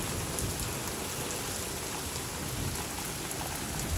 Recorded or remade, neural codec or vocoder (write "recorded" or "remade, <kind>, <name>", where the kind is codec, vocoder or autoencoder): recorded